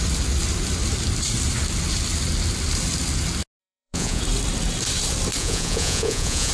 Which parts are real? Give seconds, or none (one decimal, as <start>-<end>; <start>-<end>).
0.0-3.6; 4.2-5.4